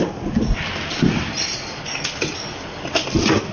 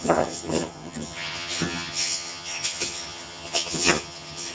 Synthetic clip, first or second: second